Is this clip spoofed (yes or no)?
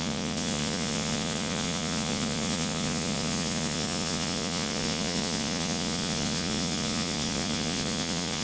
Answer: yes